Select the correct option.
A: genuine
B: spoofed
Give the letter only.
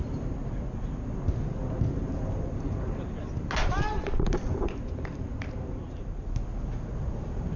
A